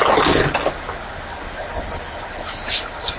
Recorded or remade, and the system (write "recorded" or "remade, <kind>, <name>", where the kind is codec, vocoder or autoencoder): recorded